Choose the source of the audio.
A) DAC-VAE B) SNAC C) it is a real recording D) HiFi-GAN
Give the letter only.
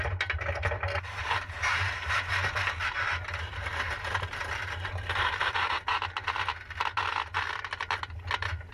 C